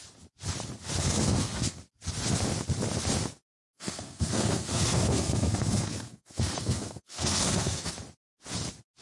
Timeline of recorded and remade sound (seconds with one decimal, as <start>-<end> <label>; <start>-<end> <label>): 0.0-1.0 recorded; 1.0-1.8 remade; 1.8-3.5 recorded; 3.5-7.9 remade; 7.9-9.0 recorded